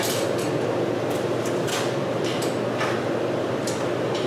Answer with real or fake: real